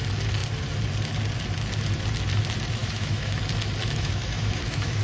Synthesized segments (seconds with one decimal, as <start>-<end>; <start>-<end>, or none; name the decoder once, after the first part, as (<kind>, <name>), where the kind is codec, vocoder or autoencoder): 2.8-3.4 (autoencoder, DAC-VAE); 3.8-5.0